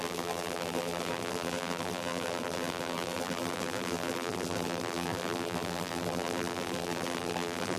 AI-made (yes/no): yes